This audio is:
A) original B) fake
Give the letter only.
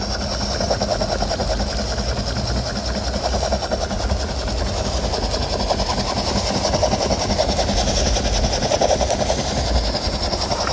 A